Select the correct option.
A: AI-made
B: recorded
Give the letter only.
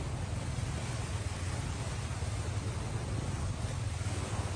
B